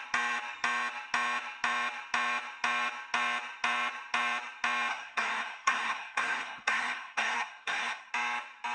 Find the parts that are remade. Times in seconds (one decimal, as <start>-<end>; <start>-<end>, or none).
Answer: 4.9-8.1

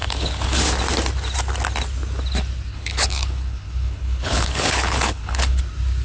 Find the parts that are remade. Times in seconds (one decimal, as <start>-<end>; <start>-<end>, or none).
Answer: 0.0-0.6; 2.7-5.6

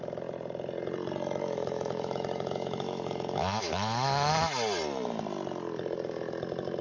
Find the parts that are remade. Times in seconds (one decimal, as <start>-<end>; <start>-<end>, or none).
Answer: 1.4-4.3

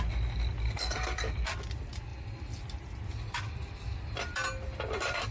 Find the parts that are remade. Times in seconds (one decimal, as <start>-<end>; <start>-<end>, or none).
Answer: 0.6-1.3

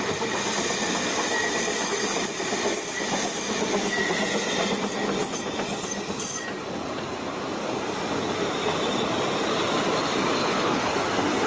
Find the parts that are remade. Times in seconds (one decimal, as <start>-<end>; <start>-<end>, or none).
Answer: 10.4-10.9

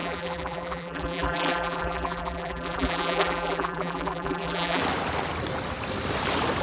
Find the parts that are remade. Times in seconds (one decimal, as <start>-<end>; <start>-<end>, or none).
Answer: 0.0-4.8

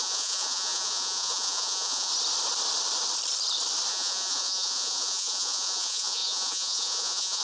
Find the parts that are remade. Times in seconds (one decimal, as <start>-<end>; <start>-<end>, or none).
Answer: 0.0-2.1; 3.9-7.4

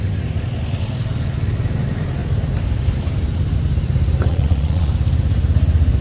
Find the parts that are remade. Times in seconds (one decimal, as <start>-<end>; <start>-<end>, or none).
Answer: 4.3-4.9